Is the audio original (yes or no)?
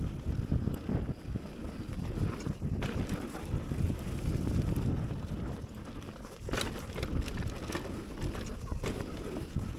yes